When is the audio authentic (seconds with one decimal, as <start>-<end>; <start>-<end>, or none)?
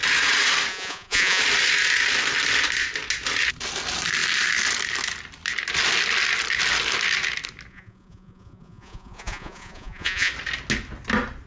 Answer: 0.0-0.7; 1.4-7.7; 10.3-11.5